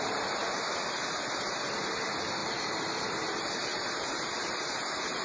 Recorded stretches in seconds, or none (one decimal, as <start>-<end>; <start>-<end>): 2.4-3.0